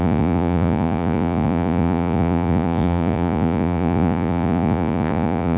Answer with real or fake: fake